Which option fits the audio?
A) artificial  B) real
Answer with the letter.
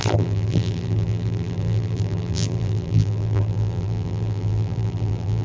A